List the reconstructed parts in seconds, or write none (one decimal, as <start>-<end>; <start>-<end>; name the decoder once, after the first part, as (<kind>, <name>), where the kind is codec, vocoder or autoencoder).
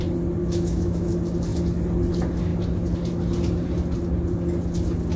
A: 0.4-1.1 (autoencoder, DAC-VAE)